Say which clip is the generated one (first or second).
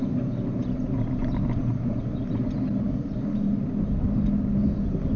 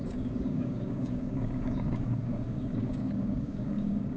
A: second